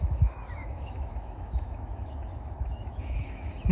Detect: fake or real fake